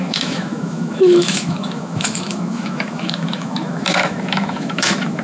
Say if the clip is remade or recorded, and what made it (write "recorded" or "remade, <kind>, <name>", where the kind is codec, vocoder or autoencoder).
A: remade, autoencoder, DAC-VAE